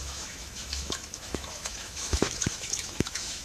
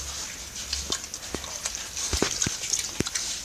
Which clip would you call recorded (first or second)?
second